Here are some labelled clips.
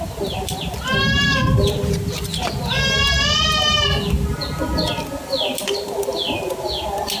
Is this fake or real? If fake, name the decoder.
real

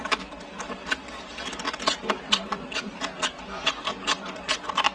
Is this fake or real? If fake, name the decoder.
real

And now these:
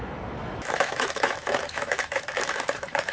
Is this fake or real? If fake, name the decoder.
fake, autoencoder, DAC-VAE